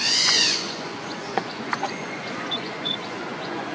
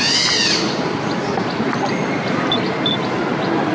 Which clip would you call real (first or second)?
second